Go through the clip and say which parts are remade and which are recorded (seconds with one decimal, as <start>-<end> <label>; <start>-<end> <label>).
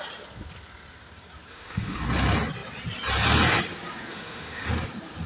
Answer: 0.0-1.5 recorded; 1.5-2.0 remade; 2.0-4.1 recorded; 4.1-4.7 remade; 4.7-5.3 recorded